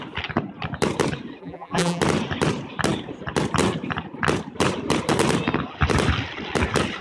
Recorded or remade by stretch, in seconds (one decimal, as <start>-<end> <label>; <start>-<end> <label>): 0.0-1.4 recorded; 1.4-2.0 remade; 2.0-7.0 recorded